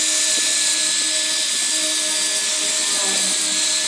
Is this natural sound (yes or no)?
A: yes